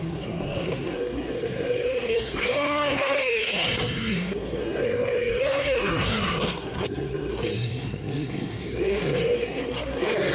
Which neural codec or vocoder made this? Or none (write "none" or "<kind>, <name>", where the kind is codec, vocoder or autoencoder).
codec, SNAC